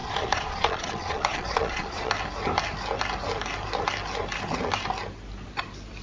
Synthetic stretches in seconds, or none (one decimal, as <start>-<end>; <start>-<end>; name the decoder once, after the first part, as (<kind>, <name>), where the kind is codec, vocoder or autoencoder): 0.0-2.1 (vocoder, Vocos)